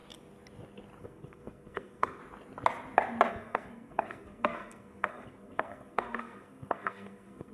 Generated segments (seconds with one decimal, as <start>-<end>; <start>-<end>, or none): 1.0-2.2; 3.3-7.5